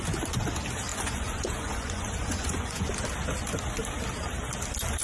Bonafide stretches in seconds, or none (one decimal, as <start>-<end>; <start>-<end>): 0.0-0.9; 2.9-5.0